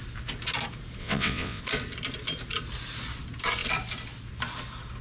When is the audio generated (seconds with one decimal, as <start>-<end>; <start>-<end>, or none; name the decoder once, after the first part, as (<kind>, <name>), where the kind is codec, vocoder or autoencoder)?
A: 1.0-1.6 (vocoder, WaveNeXt)